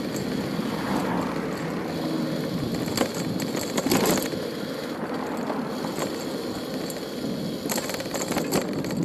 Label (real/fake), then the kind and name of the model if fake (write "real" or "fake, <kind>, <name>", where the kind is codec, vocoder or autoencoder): real